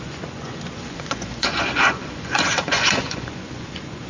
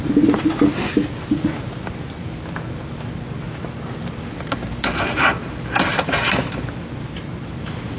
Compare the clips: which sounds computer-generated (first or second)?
first